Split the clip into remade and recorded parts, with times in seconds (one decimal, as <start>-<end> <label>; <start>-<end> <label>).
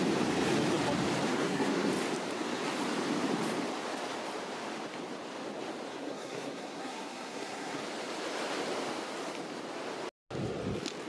0.0-1.3 recorded; 1.3-1.9 remade; 1.9-5.9 recorded; 5.9-7.8 remade; 7.8-11.1 recorded